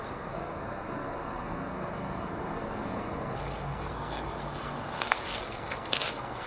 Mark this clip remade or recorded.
remade